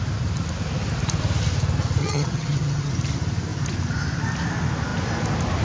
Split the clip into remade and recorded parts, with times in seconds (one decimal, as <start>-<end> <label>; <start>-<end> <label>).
0.0-2.0 recorded; 2.0-2.9 remade; 2.9-5.6 recorded